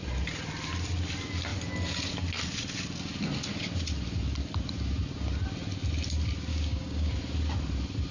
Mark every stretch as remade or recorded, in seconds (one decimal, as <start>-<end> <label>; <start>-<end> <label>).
0.0-6.5 recorded; 6.5-7.1 remade; 7.1-8.1 recorded